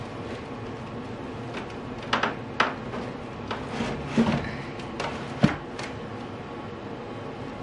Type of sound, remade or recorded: recorded